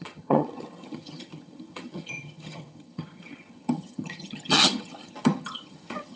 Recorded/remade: remade